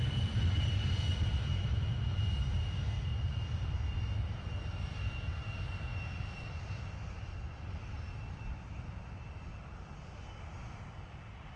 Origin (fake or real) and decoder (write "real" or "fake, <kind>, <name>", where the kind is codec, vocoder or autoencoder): real